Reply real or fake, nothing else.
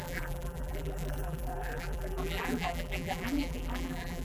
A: fake